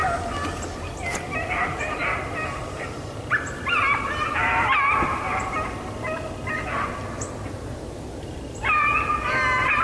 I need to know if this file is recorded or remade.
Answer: recorded